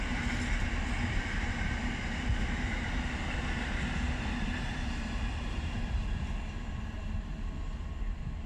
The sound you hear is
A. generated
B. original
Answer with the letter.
B